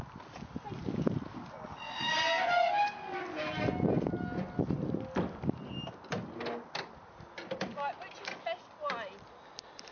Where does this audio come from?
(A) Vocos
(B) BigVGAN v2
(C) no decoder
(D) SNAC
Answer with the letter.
C